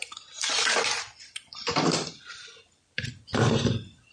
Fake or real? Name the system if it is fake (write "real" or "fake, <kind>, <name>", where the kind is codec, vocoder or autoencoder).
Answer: fake, vocoder, BigVGAN v2